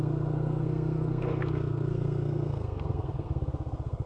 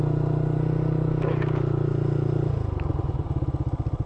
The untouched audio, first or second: second